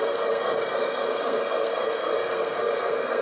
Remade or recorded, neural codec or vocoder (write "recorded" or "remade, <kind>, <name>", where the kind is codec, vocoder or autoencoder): remade, codec, SNAC